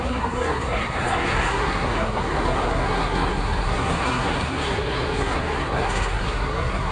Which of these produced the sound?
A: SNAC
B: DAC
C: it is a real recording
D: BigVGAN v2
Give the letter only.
A